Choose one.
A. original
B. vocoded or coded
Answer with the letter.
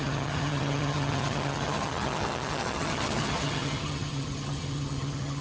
B